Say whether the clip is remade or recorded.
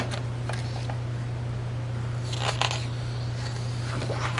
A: remade